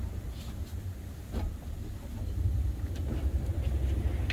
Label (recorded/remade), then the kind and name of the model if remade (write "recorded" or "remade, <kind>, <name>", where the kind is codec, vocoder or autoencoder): recorded